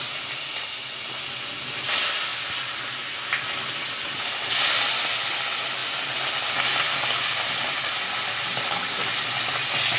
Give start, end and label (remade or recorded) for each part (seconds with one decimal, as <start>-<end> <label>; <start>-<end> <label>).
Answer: 0.0-10.0 recorded